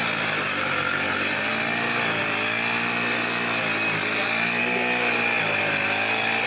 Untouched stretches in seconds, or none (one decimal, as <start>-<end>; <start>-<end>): 0.0-6.5